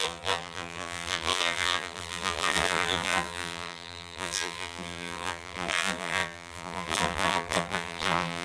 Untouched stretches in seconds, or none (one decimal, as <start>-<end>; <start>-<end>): none